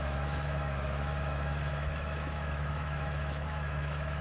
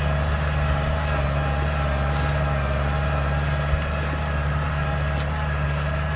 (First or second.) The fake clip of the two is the first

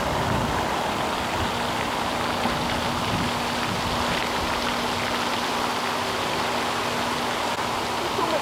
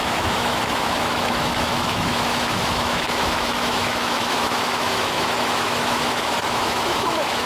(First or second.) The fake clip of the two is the second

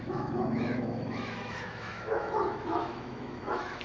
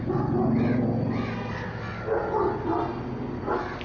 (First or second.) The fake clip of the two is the first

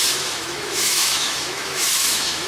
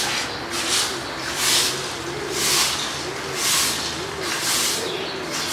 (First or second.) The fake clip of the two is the first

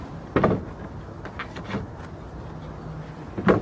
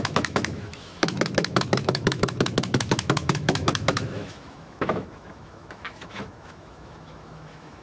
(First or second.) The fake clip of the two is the second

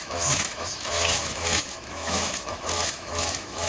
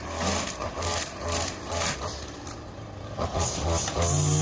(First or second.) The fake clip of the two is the first